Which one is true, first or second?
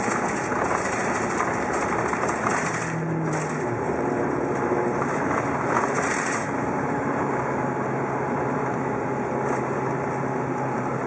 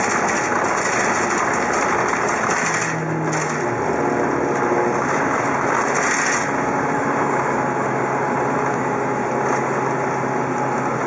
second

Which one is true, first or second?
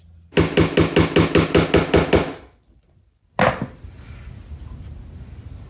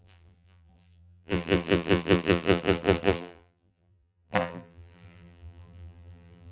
first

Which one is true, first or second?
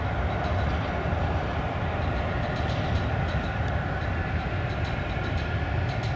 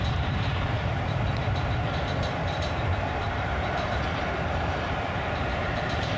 first